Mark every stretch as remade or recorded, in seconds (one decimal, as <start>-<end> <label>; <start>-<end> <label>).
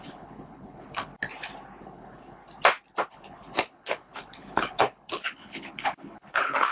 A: 0.0-1.1 remade; 1.1-1.8 recorded; 1.8-2.4 remade; 2.4-3.1 recorded; 3.1-6.7 remade